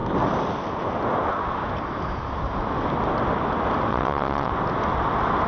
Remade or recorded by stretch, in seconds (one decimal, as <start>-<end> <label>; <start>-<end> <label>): 0.0-3.9 recorded; 3.9-4.5 remade; 4.5-5.5 recorded